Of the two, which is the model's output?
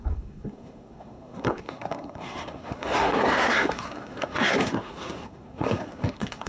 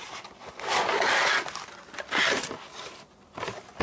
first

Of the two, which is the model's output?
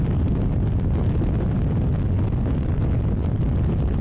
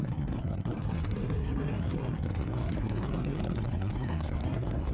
second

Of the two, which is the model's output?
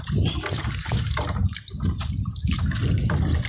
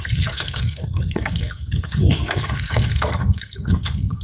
second